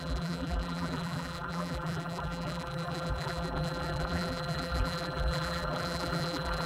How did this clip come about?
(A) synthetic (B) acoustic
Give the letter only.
A